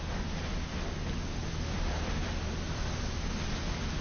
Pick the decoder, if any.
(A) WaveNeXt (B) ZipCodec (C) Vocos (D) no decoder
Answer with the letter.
D